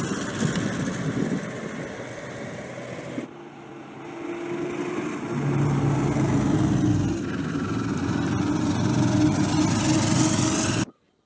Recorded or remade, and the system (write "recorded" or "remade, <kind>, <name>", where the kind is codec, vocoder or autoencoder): recorded